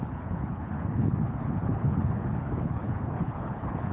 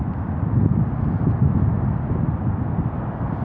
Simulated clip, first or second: first